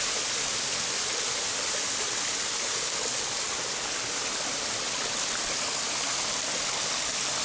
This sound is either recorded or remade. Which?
recorded